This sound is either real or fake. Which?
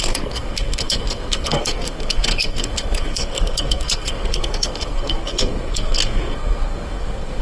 fake